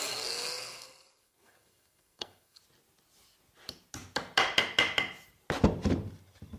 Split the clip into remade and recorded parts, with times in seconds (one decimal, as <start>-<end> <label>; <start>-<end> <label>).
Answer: 0.0-2.6 remade; 2.6-6.6 recorded